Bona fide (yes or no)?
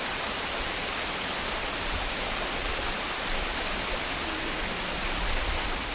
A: yes